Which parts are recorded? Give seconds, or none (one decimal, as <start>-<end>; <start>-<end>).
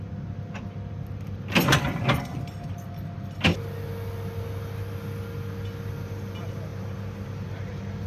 0.0-8.1